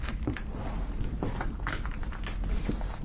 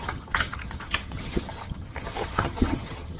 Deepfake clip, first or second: second